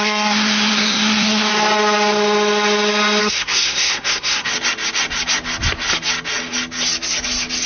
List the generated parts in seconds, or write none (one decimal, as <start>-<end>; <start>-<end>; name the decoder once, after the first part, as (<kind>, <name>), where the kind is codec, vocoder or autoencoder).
0.0-1.5 (codec, SNAC); 3.2-4.5